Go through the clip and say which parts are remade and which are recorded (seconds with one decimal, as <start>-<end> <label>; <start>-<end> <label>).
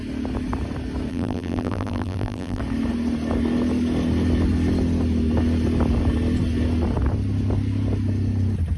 0.0-1.1 recorded; 1.1-2.6 remade; 2.6-8.8 recorded